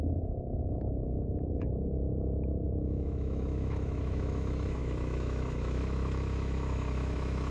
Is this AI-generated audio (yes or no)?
yes